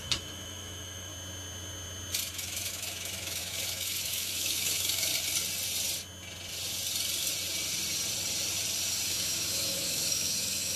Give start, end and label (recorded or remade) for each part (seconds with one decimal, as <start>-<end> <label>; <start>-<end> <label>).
0.0-1.1 remade; 1.1-2.3 recorded; 2.3-5.1 remade; 5.1-9.1 recorded; 9.1-10.8 remade